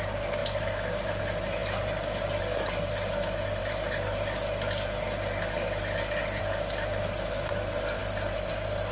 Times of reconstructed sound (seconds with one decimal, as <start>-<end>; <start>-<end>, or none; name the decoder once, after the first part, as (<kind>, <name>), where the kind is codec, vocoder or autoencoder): none